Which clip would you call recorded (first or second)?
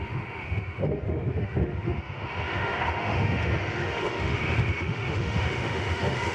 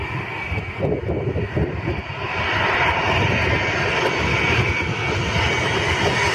second